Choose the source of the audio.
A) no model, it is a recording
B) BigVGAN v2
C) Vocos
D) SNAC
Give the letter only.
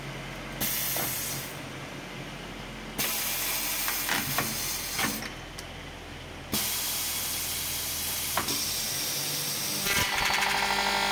A